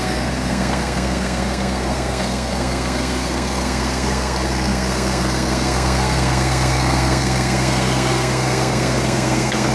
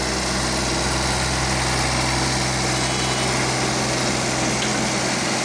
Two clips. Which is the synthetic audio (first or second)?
first